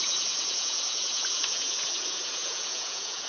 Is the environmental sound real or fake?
fake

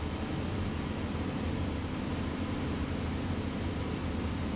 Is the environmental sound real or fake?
real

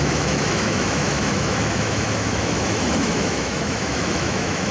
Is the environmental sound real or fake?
fake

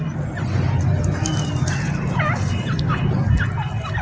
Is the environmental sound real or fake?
real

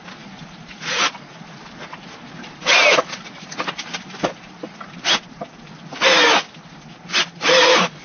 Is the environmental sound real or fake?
fake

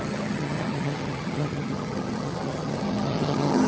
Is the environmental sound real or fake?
fake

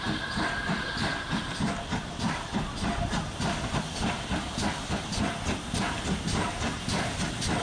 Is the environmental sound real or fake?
real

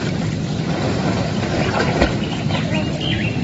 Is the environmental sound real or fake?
real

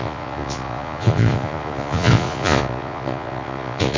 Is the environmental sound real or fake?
fake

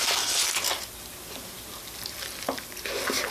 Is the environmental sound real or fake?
real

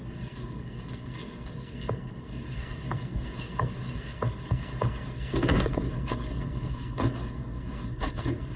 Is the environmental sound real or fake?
fake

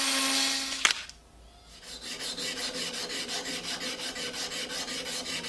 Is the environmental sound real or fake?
real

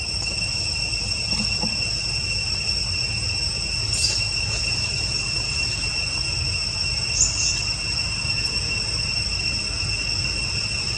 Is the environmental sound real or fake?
real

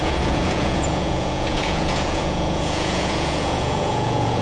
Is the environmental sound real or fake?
fake